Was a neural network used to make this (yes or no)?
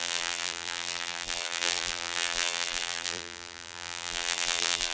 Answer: yes